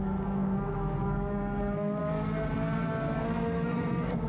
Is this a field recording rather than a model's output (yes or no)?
no